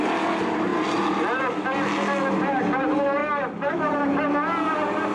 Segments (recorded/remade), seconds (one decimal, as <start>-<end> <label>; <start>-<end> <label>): 0.0-5.1 recorded